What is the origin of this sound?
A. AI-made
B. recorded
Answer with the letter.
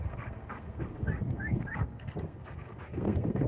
A